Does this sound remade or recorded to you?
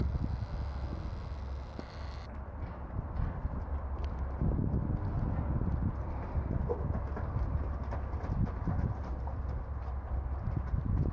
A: recorded